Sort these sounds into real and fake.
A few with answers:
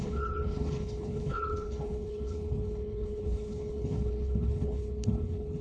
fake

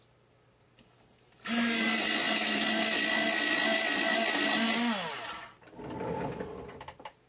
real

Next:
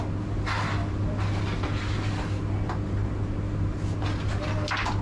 real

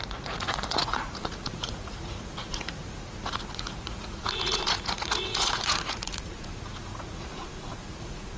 fake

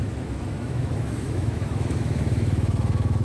fake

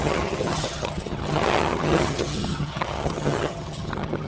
fake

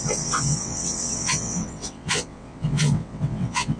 fake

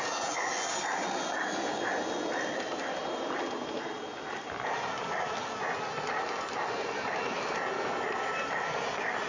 fake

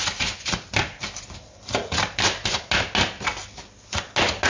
real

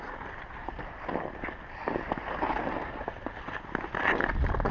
real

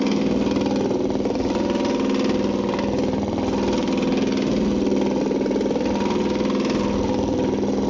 real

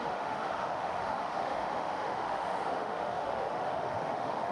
fake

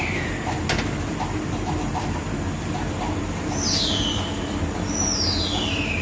real